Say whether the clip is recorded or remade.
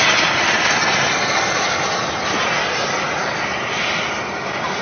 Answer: recorded